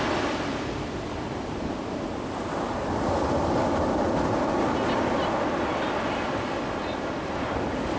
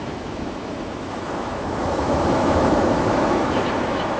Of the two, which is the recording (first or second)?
first